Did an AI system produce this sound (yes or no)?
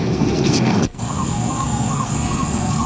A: yes